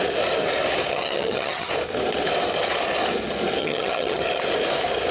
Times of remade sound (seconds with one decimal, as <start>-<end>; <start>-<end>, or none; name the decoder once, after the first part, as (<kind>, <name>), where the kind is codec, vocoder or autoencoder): 0.9-1.7 (vocoder, HiFi-GAN); 3.6-4.2